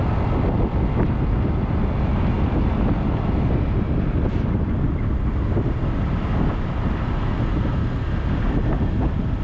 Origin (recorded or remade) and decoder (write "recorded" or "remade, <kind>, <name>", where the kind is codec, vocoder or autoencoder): recorded